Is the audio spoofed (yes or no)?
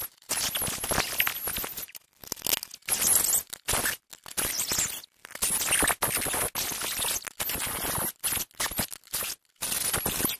no